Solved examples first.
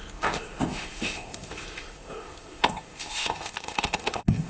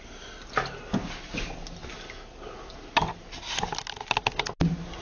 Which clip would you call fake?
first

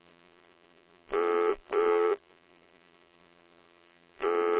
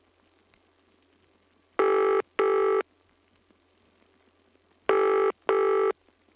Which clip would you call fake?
first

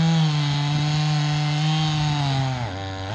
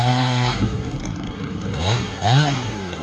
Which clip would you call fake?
second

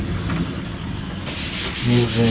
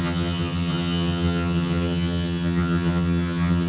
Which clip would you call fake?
second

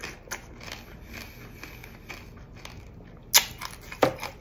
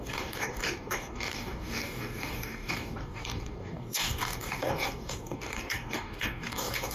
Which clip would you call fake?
second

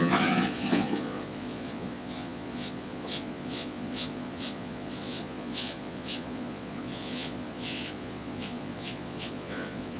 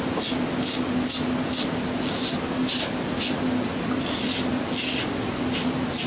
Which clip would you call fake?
first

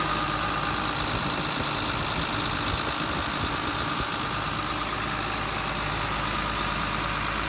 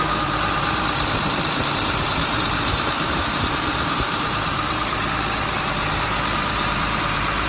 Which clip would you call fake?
second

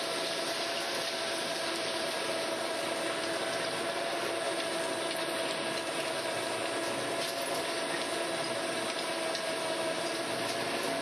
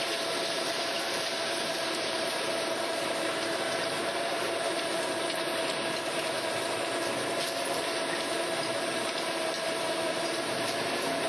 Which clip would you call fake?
second